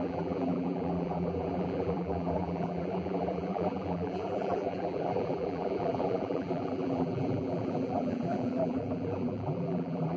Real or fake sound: fake